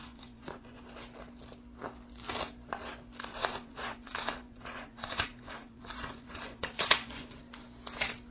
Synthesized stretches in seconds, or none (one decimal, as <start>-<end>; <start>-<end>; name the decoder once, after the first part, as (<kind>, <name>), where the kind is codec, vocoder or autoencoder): 0.0-0.8 (vocoder, Vocos); 3.3-7.4